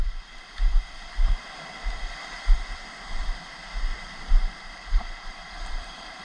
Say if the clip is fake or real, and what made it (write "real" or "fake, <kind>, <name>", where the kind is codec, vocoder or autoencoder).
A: fake, vocoder, BigVGAN v2